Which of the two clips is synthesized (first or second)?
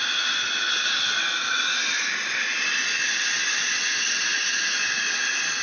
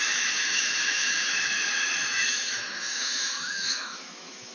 second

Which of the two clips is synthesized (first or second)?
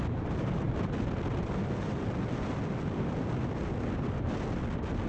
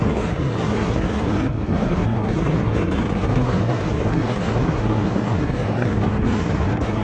second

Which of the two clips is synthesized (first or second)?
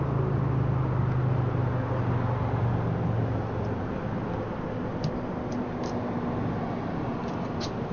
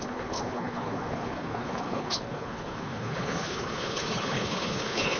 second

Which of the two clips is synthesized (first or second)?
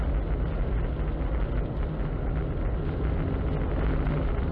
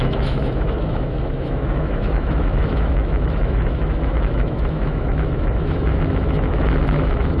second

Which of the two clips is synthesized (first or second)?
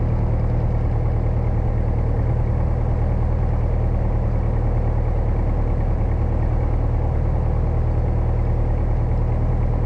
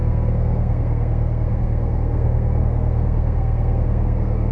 second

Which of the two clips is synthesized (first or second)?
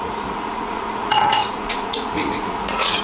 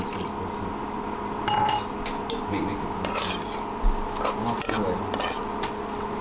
first